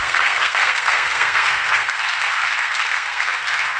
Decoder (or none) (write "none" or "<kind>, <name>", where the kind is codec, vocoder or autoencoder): codec, SNAC